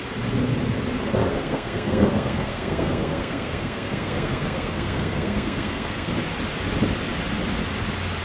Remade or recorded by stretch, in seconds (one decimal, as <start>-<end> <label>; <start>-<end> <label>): 0.0-1.2 recorded; 1.2-6.1 remade; 6.1-8.2 recorded